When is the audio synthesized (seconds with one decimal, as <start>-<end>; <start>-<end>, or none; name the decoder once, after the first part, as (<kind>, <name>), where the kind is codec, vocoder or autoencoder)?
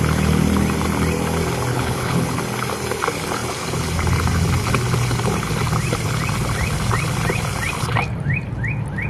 1.7-2.4 (codec, HILCodec)